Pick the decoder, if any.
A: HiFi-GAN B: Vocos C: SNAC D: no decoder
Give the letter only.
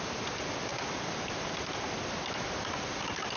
D